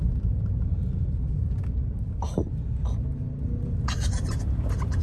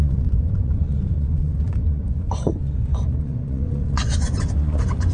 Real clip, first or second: first